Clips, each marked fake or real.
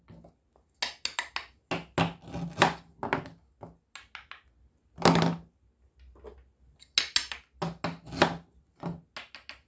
real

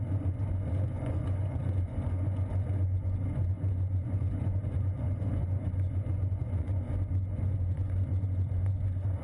fake